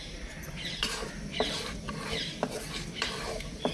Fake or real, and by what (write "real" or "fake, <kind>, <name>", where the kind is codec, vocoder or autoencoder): fake, vocoder, BigVGAN v2